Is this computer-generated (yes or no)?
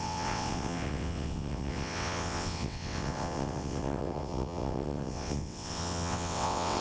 yes